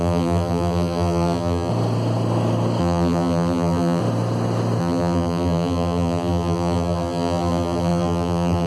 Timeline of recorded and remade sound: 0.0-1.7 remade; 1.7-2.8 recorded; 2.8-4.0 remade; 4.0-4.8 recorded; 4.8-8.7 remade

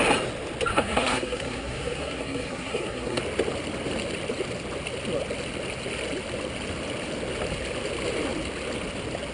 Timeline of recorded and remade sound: 0.0-0.7 recorded; 0.7-3.2 remade; 3.2-9.3 recorded

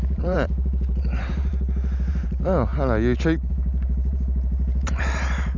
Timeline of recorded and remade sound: 0.0-1.5 remade; 1.5-2.1 recorded; 2.1-2.7 remade; 2.7-3.5 recorded; 3.5-5.6 remade

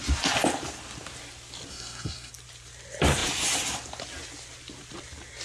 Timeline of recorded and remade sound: 0.0-1.7 recorded; 1.7-2.3 remade; 2.3-5.4 recorded

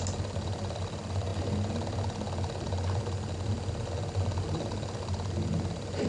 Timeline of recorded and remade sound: 0.0-6.1 recorded